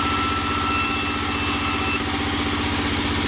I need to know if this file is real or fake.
real